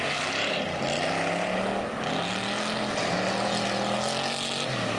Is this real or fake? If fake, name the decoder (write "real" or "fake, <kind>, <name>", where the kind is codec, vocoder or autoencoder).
real